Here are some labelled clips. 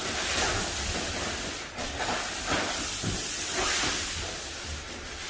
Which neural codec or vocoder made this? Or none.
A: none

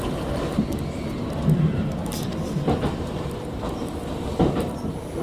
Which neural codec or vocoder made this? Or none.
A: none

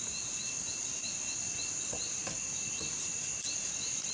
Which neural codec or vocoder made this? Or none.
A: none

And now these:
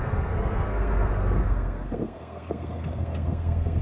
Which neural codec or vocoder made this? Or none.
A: codec, SNAC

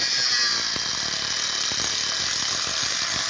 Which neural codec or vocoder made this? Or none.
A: none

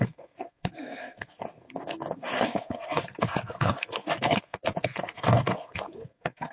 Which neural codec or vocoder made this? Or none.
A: codec, SNAC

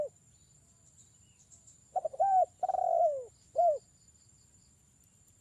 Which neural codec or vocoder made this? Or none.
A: vocoder, BigVGAN v2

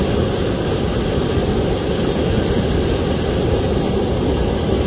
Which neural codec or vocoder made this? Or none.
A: none